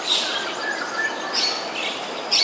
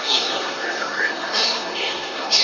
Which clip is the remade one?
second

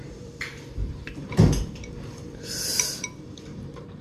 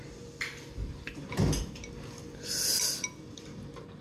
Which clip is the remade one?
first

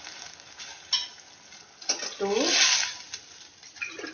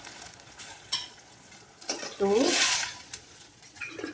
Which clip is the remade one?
second